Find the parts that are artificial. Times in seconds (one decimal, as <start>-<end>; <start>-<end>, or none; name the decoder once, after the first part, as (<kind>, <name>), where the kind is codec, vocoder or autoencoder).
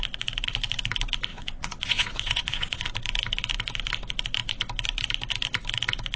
1.3-2.9 (vocoder, Vocos)